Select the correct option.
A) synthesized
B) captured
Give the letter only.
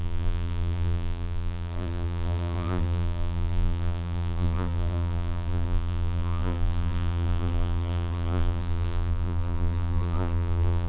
A